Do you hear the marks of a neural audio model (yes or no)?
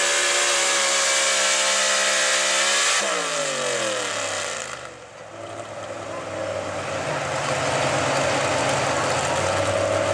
no